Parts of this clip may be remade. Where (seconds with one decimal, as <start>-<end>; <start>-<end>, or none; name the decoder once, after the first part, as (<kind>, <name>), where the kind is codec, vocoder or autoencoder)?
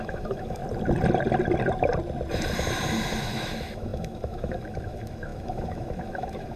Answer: 0.0-0.6 (autoencoder, DAC-VAE); 3.2-6.6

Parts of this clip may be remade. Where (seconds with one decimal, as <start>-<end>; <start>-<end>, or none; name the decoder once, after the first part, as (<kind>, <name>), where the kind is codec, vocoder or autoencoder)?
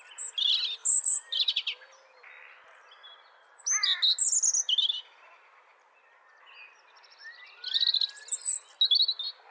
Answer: 0.8-1.4 (vocoder, BigVGAN v2)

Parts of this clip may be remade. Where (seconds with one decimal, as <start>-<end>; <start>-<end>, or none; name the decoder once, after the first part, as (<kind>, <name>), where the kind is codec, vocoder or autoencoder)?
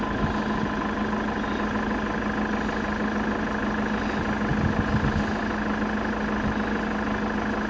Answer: none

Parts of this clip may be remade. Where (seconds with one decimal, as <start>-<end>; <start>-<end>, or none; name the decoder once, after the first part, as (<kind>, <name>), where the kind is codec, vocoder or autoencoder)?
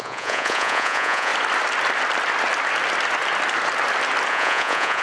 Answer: 0.0-1.3 (vocoder, Vocos); 4.3-5.0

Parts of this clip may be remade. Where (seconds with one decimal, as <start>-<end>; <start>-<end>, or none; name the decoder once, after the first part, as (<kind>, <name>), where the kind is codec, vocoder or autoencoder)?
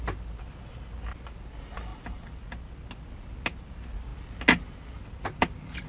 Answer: 1.9-2.4 (vocoder, BigVGAN v2)